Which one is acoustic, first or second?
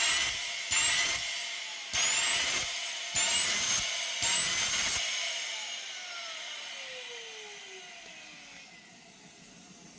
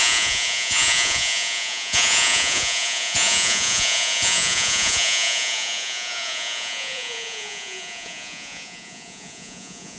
first